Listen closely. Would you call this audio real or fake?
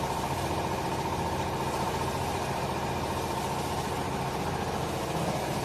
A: real